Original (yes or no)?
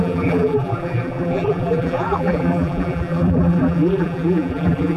no